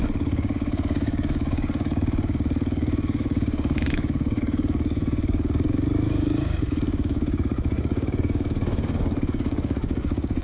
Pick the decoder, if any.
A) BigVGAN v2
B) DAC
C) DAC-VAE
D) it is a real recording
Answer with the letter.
B